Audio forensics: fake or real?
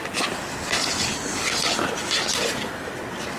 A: real